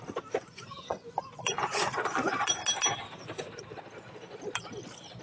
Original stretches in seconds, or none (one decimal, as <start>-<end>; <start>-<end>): 0.0-0.4; 2.5-5.2